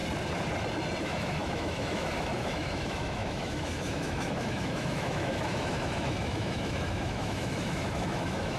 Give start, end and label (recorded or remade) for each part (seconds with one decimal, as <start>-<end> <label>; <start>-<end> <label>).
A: 0.0-1.0 recorded; 1.0-8.6 remade